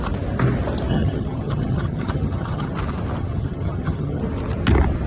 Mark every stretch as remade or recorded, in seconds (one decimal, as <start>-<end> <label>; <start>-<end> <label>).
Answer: 0.0-0.9 recorded; 0.9-2.7 remade; 2.7-3.2 recorded; 3.2-4.2 remade; 4.2-5.1 recorded